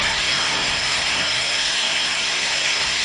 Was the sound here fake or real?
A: fake